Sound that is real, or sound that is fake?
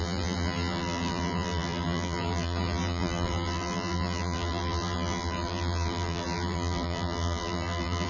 fake